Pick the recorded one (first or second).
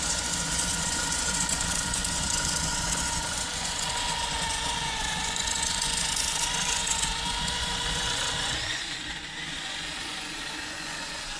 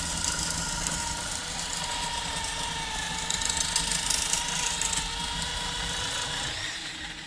second